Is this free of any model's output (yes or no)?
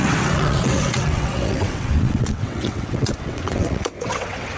no